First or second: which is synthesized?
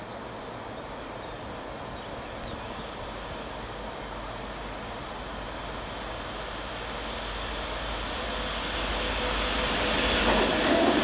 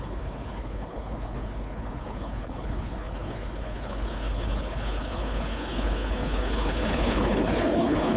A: second